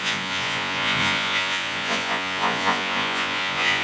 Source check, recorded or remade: remade